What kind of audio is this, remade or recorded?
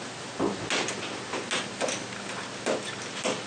recorded